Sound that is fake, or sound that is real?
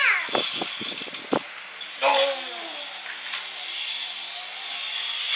real